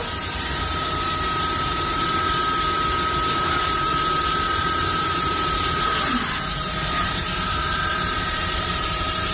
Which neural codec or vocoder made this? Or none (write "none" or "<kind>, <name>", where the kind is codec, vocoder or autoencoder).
vocoder, BigVGAN v2